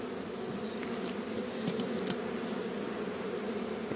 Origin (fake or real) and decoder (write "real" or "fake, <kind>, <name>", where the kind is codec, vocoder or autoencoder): real